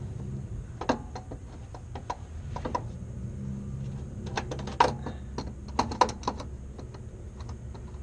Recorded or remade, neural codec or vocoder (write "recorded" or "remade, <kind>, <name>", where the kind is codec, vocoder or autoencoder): recorded